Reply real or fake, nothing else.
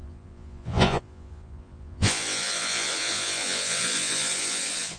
fake